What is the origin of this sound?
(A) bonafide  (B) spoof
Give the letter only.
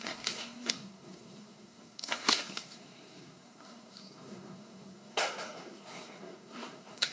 B